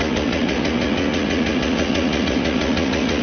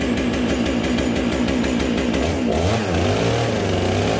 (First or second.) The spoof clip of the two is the first